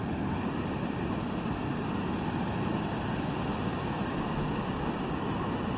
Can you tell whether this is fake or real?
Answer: real